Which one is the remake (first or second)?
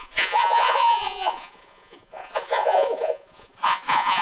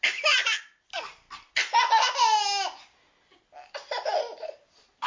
first